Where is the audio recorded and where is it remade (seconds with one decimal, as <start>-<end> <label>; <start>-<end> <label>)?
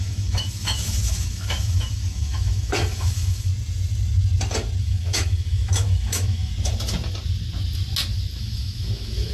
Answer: 0.0-3.5 remade; 3.5-4.8 recorded; 4.8-6.5 remade; 6.5-8.4 recorded; 8.4-9.3 remade